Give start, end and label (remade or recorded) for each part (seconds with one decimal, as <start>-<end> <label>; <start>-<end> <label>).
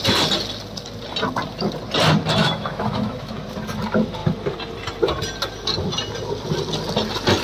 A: 0.0-2.4 recorded; 2.4-3.4 remade; 3.4-7.4 recorded